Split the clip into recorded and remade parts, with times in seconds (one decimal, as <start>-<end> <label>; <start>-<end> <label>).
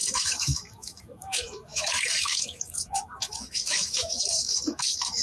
0.0-5.2 remade